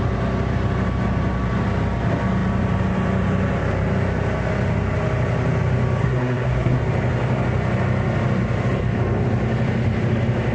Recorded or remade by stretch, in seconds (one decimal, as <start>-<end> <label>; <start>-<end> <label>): 0.0-6.0 recorded; 6.0-6.8 remade; 6.8-10.5 recorded